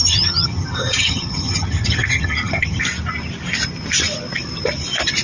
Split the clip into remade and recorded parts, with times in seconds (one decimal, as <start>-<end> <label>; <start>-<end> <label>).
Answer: 0.0-2.8 remade; 2.8-5.2 recorded